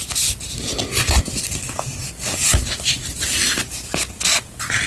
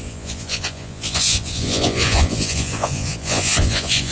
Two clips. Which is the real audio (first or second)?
first